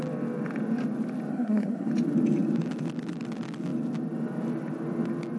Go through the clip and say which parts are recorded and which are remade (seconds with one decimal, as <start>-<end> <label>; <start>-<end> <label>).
0.0-1.3 recorded; 1.3-1.9 remade; 1.9-5.4 recorded